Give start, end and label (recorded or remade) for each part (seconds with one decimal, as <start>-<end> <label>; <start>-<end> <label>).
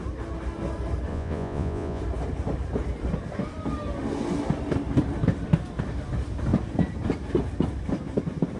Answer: 0.0-1.1 recorded; 1.1-2.0 remade; 2.0-8.6 recorded